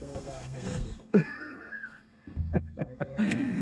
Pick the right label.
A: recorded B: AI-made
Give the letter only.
B